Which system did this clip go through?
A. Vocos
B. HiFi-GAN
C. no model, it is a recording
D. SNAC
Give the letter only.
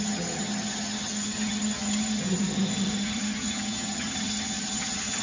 B